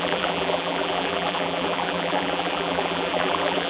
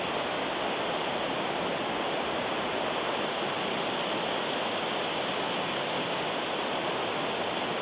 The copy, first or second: first